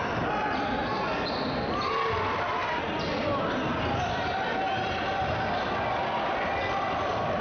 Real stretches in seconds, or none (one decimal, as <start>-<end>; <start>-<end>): 0.0-7.4